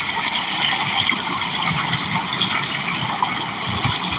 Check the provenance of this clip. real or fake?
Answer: real